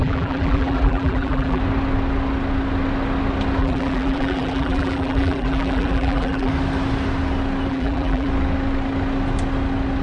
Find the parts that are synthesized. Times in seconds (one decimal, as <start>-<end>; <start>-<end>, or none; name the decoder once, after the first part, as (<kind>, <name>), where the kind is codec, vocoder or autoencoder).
0.0-1.6 (vocoder, BigVGAN v2); 3.6-6.5; 7.7-8.3